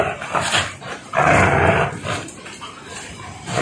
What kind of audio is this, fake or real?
real